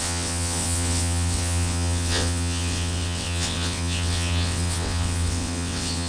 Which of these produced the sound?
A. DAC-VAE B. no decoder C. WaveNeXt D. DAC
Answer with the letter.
C